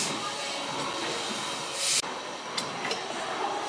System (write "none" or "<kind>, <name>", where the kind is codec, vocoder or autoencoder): none